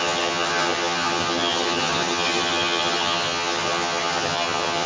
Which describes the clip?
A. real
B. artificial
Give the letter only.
B